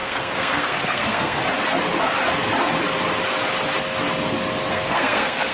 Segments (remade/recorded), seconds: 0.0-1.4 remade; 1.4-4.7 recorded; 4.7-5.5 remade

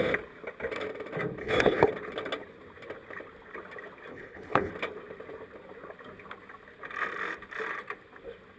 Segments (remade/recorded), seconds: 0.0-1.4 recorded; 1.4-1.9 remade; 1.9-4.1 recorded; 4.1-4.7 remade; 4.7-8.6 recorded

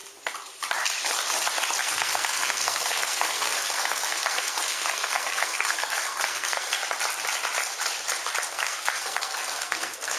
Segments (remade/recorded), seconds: 0.0-1.8 recorded; 1.8-6.8 remade; 6.8-8.5 recorded; 8.5-10.2 remade

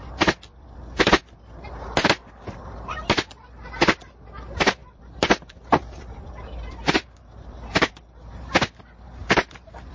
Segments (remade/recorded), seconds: 0.0-0.5 recorded; 0.5-1.2 remade; 1.2-4.8 recorded; 4.8-7.9 remade; 7.9-9.9 recorded